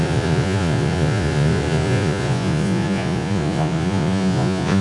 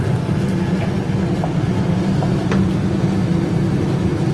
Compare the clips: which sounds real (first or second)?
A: second